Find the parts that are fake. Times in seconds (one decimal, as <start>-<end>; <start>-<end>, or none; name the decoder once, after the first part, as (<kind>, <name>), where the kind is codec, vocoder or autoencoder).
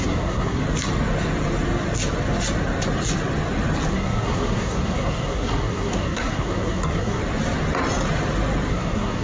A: 0.0-0.6 (codec, SNAC); 3.9-7.2; 8.7-9.2